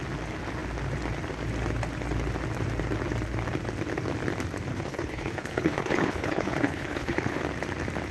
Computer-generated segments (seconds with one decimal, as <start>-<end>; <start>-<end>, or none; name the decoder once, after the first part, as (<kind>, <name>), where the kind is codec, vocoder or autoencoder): 4.7-7.4 (codec, HILCodec)